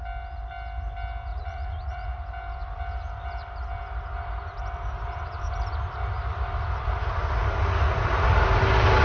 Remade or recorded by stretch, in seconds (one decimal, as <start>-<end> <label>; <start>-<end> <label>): 0.0-1.3 recorded; 1.3-2.2 remade; 2.2-9.0 recorded